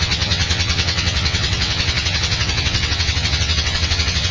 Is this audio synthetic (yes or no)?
yes